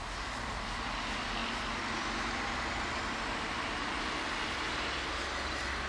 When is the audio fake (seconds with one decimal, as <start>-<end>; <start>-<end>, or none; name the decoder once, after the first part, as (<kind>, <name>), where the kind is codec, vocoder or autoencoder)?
none